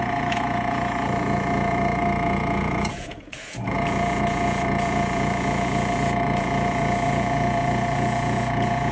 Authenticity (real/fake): fake